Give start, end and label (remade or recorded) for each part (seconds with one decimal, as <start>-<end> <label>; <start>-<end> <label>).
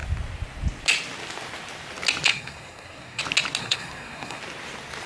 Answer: 0.0-2.3 recorded; 2.3-3.2 remade; 3.2-3.6 recorded; 3.6-4.4 remade; 4.4-5.1 recorded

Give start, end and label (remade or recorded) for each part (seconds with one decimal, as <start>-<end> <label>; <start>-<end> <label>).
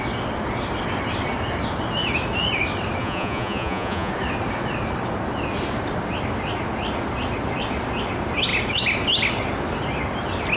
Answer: 0.0-3.0 recorded; 3.0-4.1 remade; 4.1-10.6 recorded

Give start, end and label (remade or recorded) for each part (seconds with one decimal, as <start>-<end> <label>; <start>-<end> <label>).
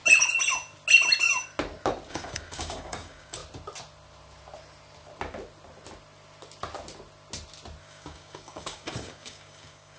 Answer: 0.0-2.1 recorded; 2.1-3.4 remade; 3.4-7.8 recorded; 7.8-10.0 remade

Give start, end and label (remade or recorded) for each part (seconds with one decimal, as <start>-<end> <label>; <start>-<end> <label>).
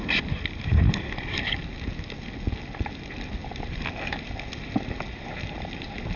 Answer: 0.0-6.2 recorded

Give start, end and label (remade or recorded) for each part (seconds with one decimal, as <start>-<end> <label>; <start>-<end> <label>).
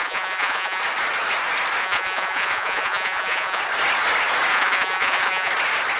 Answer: 0.0-0.8 remade; 0.8-1.8 recorded; 1.8-3.6 remade; 3.6-4.5 recorded; 4.5-5.5 remade; 5.5-6.0 recorded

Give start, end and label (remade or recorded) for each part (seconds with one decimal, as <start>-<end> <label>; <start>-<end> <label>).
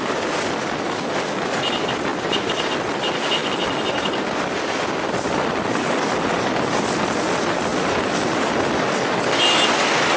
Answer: 0.0-2.1 recorded; 2.1-3.0 remade; 3.0-3.4 recorded; 3.4-4.9 remade; 4.9-10.2 recorded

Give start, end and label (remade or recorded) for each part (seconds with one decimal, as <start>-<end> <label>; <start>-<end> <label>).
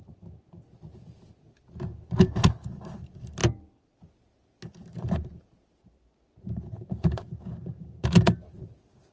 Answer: 0.0-9.1 recorded